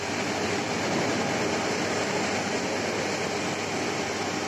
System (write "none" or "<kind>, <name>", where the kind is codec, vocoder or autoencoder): none